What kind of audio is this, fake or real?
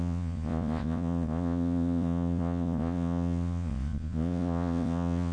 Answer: fake